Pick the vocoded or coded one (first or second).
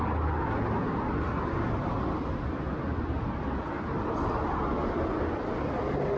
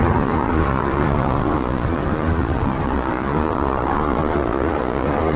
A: second